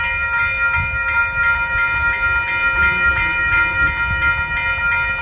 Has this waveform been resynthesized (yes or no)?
no